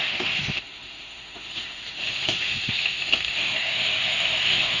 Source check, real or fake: fake